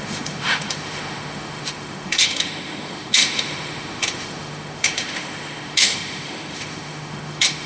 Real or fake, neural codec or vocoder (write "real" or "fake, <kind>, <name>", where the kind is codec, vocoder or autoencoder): fake, autoencoder, DAC-VAE